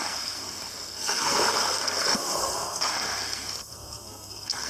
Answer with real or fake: fake